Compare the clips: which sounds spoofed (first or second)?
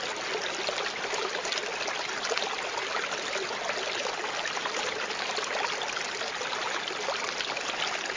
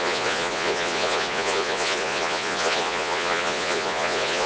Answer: second